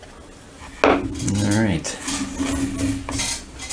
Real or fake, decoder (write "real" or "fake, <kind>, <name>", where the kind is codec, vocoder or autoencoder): real